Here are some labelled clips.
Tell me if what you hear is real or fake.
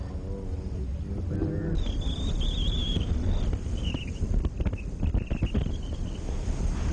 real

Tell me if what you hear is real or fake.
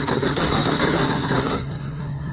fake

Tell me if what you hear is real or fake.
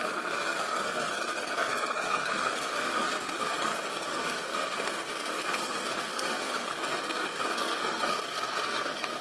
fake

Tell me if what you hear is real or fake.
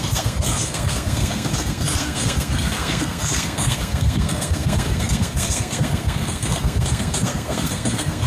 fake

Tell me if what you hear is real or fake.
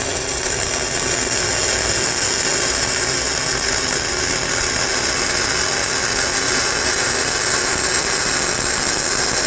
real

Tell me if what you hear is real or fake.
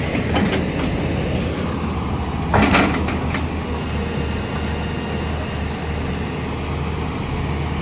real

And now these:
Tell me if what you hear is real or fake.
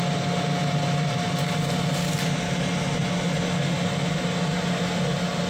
real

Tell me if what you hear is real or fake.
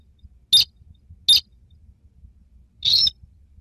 real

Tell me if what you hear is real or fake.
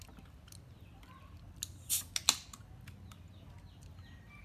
real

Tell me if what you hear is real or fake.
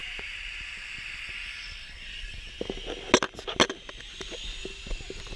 real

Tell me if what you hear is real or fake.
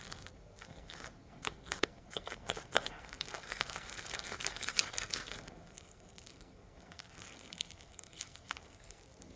fake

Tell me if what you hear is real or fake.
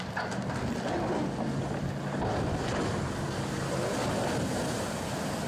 real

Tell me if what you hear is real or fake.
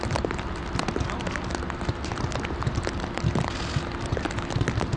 real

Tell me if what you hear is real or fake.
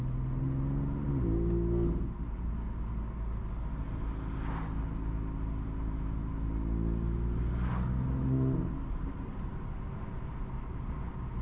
real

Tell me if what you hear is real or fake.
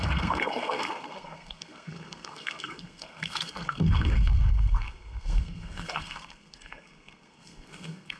fake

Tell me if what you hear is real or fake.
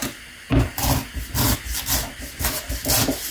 real